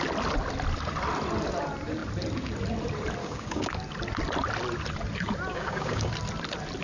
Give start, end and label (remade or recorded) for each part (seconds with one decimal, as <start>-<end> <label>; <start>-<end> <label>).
0.0-3.2 recorded; 3.2-3.7 remade; 3.7-5.5 recorded; 5.5-6.1 remade; 6.1-6.8 recorded